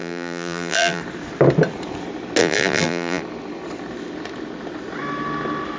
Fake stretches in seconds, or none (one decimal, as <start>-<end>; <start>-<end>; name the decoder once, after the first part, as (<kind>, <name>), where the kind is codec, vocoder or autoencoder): 0.0-1.0 (vocoder, BigVGAN v2); 2.4-3.2